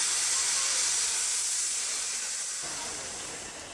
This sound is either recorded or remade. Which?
recorded